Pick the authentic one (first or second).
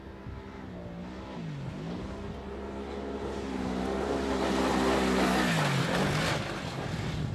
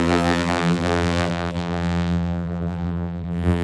first